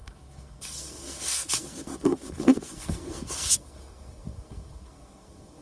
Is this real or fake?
fake